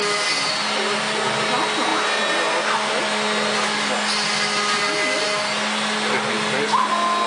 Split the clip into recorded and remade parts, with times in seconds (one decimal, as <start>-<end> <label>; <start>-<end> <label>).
0.0-7.3 recorded